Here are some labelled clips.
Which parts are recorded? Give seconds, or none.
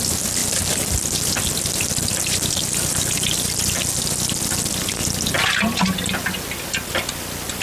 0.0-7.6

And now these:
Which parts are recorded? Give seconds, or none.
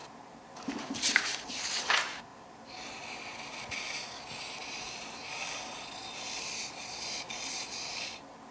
0.0-8.5